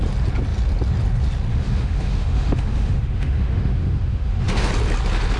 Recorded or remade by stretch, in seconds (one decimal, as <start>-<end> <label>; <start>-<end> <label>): 0.0-1.5 recorded; 1.5-4.7 remade; 4.7-5.4 recorded